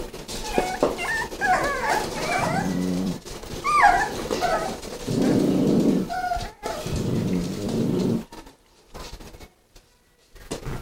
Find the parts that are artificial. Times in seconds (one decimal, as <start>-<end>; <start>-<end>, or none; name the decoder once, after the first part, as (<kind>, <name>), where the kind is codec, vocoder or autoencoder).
1.6-6.1 (vocoder, BigVGAN v2)